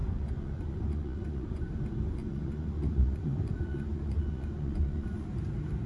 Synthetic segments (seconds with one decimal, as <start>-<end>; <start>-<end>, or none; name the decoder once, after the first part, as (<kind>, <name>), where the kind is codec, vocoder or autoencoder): 0.0-1.7 (vocoder, Vocos); 2.2-5.3